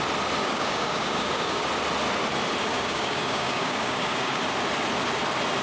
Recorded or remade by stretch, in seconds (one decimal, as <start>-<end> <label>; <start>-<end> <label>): 0.0-0.4 recorded; 0.4-1.7 remade; 1.7-2.7 recorded; 2.7-4.4 remade; 4.4-5.6 recorded